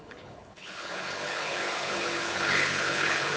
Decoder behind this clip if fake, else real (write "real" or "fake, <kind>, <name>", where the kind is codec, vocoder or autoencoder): fake, codec, HILCodec